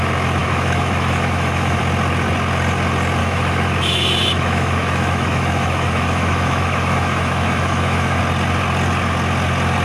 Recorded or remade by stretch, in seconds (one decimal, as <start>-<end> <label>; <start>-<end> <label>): 0.0-0.4 recorded; 0.4-1.8 remade; 1.8-3.2 recorded; 3.2-8.2 remade; 8.2-9.8 recorded